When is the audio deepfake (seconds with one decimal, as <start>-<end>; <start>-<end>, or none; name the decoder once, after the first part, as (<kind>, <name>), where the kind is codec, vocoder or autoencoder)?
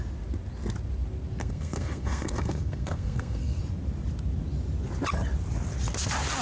1.4-3.6 (codec, SNAC)